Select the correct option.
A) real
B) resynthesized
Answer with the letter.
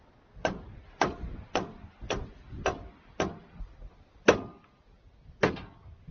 A